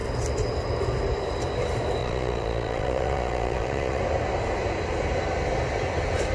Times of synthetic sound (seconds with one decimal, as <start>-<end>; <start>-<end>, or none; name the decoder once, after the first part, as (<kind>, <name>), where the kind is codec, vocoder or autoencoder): 2.0-4.0 (vocoder, Vocos)